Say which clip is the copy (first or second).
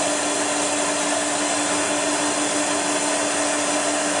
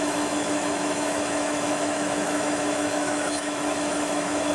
second